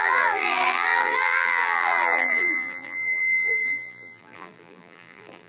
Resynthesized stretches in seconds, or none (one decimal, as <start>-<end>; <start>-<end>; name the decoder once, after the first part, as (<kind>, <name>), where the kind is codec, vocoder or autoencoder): 0.0-5.5 (vocoder, BigVGAN v2)